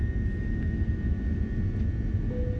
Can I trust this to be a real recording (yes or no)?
yes